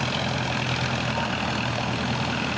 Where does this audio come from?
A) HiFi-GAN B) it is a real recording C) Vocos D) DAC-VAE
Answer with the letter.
B